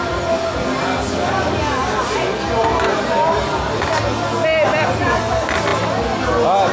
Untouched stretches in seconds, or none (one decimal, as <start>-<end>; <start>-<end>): 0.0-6.7